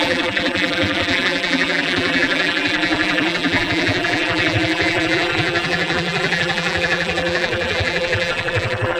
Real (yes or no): no